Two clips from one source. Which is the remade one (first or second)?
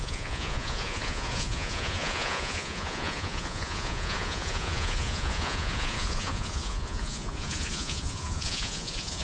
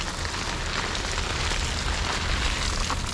first